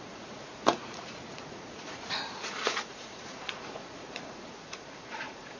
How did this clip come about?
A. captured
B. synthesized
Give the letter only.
B